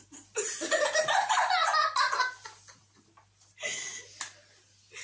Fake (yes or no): no